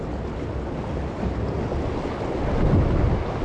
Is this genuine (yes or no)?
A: yes